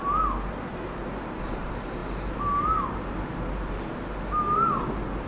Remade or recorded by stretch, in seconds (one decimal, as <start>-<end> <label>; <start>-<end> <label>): 0.0-5.3 recorded